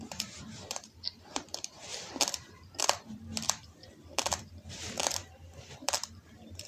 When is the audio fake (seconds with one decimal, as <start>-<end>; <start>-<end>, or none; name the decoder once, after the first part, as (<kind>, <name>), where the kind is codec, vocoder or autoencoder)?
0.0-6.7 (vocoder, BigVGAN v2)